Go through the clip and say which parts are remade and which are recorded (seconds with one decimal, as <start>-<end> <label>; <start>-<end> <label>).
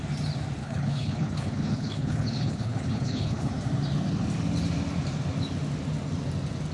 0.0-0.6 recorded; 0.6-3.5 remade; 3.5-6.7 recorded